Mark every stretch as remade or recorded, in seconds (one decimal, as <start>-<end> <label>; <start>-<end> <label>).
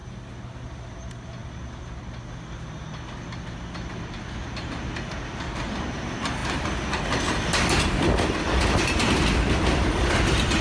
0.0-10.6 recorded